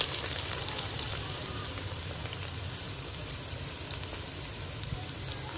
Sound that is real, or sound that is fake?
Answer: real